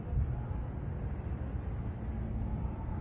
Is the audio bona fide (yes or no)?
yes